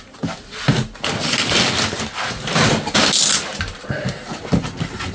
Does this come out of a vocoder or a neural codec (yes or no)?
no